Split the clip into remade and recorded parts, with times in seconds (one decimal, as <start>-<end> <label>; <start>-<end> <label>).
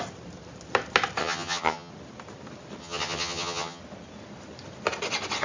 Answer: 0.0-1.2 recorded; 1.2-1.9 remade; 1.9-2.8 recorded; 2.8-3.8 remade; 3.8-5.4 recorded